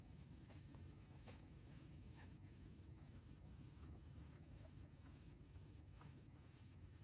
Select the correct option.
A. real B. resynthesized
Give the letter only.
B